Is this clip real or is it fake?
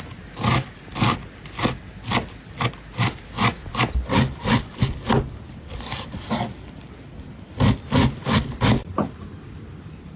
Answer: real